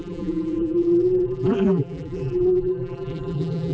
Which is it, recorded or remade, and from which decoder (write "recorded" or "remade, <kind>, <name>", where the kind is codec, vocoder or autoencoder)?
remade, vocoder, BigVGAN v2